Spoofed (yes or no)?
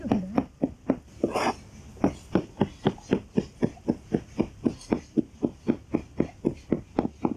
no